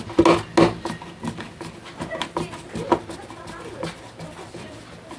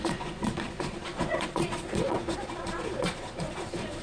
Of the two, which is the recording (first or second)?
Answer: first